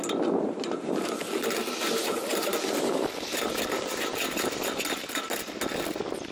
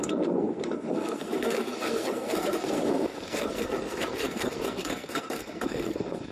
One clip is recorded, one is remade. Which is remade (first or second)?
second